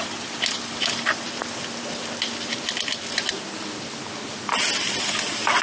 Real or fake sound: real